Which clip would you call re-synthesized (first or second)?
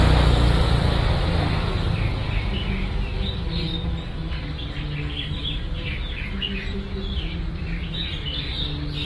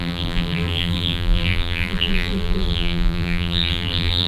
second